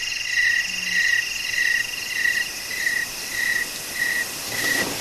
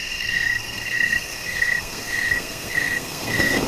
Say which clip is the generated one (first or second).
second